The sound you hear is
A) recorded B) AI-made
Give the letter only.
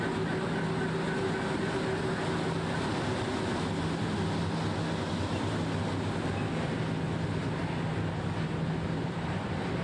A